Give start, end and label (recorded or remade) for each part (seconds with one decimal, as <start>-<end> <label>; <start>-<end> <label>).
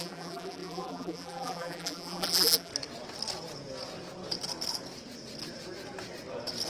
0.0-2.7 remade; 2.7-6.7 recorded